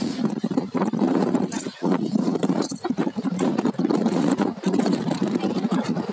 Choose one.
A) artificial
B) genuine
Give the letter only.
A